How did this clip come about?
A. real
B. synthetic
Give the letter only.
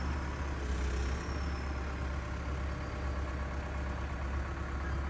A